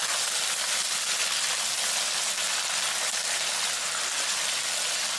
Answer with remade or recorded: recorded